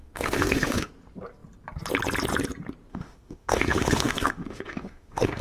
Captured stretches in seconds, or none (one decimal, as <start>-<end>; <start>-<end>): 0.9-2.9